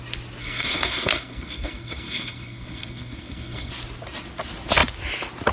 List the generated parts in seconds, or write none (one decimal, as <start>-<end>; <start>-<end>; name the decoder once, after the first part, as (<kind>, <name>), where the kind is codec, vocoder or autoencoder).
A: 0.4-3.7 (codec, SNAC)